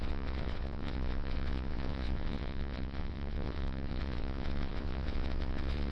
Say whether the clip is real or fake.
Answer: fake